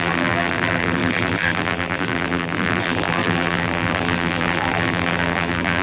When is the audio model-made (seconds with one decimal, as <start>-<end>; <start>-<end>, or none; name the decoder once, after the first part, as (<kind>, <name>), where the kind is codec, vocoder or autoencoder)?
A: 0.0-5.8 (vocoder, BigVGAN v2)